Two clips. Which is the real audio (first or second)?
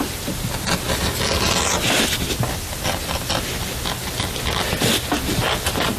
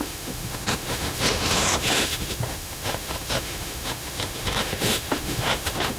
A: first